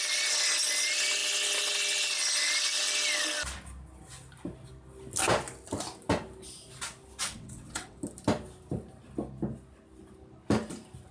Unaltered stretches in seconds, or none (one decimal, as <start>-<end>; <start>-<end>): 0.0-7.2; 8.0-11.1